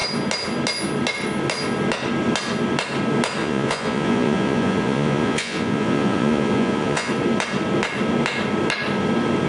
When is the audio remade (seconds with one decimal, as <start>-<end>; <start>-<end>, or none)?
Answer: 3.4-7.1

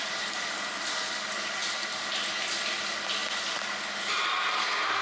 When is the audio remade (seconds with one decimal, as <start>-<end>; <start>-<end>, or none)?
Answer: none

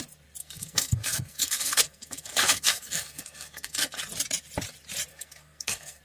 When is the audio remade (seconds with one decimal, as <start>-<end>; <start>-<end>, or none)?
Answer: 0.4-4.0; 5.1-6.0

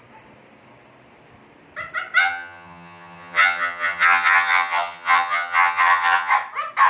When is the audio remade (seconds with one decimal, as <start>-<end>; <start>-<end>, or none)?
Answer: 2.2-6.3

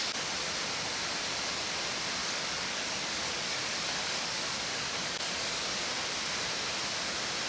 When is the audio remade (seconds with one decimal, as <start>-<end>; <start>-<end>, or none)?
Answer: 2.2-5.9

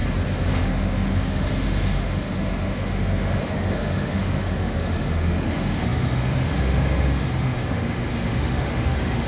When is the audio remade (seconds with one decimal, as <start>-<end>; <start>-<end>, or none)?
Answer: 0.5-9.3